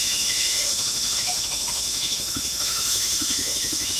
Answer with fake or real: fake